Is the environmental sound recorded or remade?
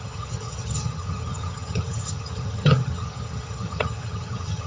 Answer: remade